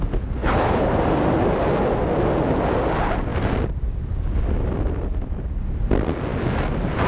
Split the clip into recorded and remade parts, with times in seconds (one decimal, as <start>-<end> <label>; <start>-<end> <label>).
0.0-0.4 recorded; 0.4-1.0 remade; 1.0-7.1 recorded